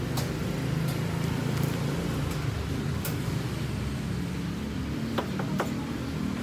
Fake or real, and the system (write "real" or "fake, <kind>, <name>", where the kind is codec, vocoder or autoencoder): real